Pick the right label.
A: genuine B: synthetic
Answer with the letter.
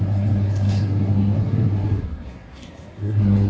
B